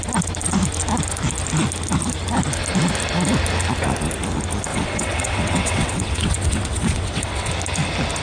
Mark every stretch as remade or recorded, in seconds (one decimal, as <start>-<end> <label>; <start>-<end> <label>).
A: 0.0-4.7 recorded; 4.7-7.5 remade; 7.5-8.2 recorded